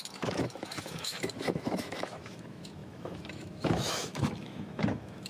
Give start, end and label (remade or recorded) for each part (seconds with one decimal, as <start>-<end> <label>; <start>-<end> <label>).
0.0-5.3 remade